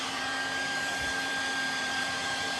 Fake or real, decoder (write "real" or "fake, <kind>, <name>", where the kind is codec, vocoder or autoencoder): fake, vocoder, BigVGAN v2